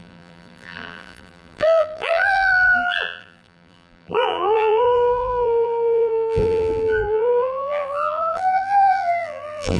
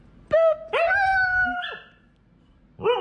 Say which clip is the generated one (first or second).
first